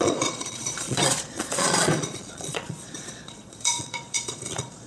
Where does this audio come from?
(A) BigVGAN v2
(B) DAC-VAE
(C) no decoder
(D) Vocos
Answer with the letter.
D